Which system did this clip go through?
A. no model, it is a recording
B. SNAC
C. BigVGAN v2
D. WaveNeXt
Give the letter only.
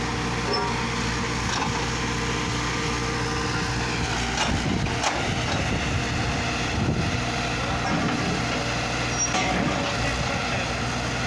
A